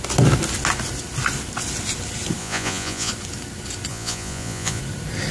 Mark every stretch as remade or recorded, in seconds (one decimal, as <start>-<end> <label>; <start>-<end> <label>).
0.0-2.4 recorded; 2.4-3.1 remade; 3.1-3.9 recorded; 3.9-4.8 remade; 4.8-5.3 recorded